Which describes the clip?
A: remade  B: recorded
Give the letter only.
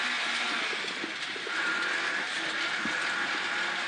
B